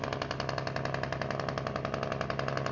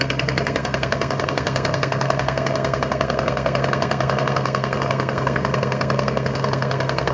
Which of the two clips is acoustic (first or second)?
first